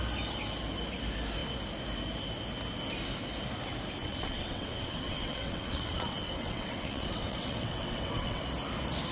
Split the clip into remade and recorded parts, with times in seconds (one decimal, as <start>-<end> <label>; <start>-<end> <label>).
0.0-4.0 recorded; 4.0-8.4 remade; 8.4-9.1 recorded